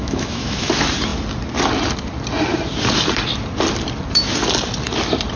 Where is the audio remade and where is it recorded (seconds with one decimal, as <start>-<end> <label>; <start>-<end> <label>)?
0.0-0.7 remade; 0.7-5.4 recorded